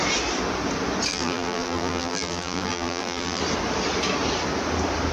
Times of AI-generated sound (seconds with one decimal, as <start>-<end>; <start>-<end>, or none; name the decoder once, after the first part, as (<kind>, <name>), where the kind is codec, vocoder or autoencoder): 1.1-3.4 (vocoder, BigVGAN v2)